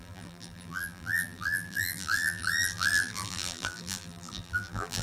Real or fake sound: fake